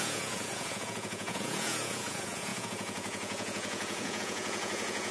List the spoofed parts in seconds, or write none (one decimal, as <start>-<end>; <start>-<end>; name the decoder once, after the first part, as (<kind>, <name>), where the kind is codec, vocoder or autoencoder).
0.0-5.1 (vocoder, Vocos)